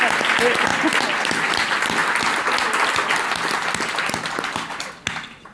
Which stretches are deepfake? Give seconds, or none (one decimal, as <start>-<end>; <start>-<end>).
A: none